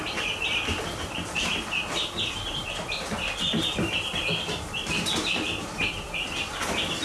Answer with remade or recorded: remade